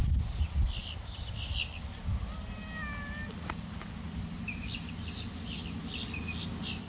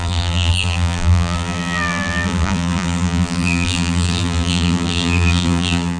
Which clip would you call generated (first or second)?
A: second